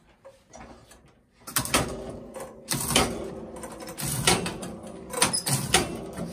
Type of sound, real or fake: real